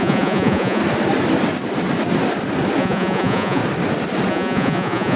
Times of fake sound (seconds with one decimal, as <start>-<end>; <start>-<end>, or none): 0.0-0.8; 2.8-3.6; 4.3-5.2